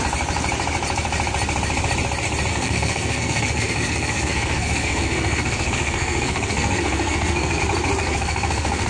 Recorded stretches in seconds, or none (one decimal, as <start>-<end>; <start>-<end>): 0.0-2.5; 7.6-8.0

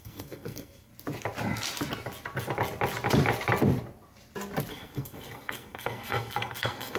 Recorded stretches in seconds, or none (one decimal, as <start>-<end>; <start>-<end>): 0.9-4.7

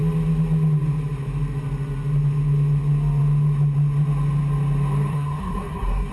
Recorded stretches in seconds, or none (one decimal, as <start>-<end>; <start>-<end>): 0.0-5.1

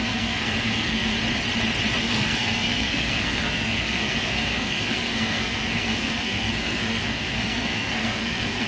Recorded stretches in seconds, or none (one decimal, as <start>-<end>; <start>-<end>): 1.1-2.0

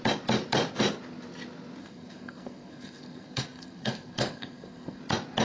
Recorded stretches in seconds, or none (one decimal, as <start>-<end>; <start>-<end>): 0.0-1.8; 5.0-5.4

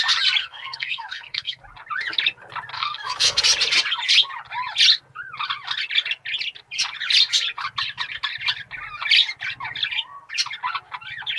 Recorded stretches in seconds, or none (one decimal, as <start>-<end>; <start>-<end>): 0.0-0.4; 1.6-2.7; 3.4-11.4

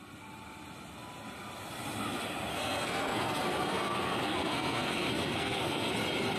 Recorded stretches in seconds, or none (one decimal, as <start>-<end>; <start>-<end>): 0.0-2.5; 5.9-6.4

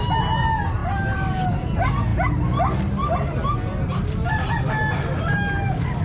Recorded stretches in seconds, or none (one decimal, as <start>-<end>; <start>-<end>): 0.0-6.0